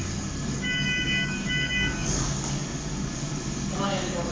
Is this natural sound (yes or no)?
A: no